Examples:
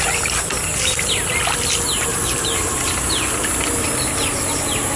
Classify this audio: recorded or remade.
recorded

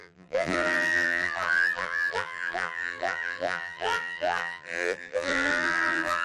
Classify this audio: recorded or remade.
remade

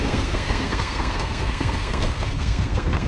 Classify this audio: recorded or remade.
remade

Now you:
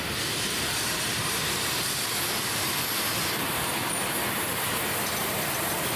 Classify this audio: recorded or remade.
recorded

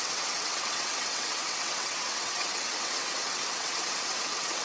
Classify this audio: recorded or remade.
remade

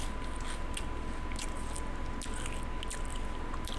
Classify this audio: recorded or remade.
recorded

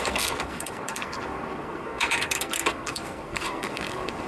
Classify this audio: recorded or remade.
remade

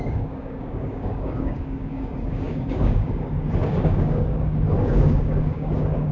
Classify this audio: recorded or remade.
remade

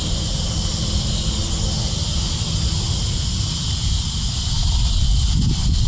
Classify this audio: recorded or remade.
recorded